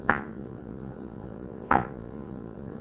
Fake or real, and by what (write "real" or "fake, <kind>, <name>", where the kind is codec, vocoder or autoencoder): fake, vocoder, Vocos